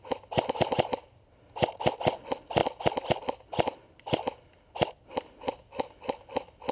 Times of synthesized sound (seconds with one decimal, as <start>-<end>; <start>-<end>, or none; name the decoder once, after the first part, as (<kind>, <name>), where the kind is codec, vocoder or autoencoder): none